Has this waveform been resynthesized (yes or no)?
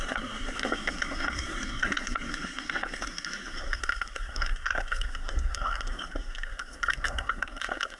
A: yes